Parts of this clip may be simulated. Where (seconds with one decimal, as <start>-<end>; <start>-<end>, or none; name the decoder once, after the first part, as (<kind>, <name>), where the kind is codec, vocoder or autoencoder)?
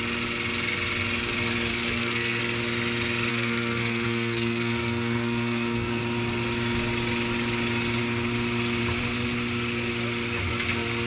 1.7-2.4 (codec, SNAC); 3.3-6.0